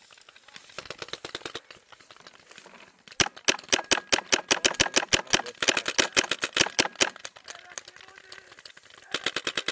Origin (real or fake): real